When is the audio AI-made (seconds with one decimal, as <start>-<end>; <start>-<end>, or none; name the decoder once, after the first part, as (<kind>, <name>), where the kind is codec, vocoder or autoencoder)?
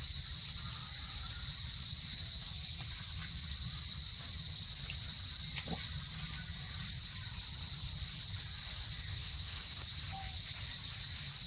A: 9.1-9.8 (codec, DAC)